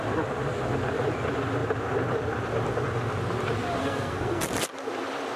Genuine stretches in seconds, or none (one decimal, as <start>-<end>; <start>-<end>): 0.0-3.8; 4.4-5.4